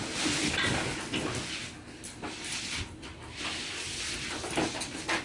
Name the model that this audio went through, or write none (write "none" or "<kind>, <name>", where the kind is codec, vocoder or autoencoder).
none